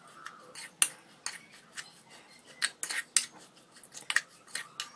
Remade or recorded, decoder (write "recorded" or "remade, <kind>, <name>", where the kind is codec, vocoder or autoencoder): recorded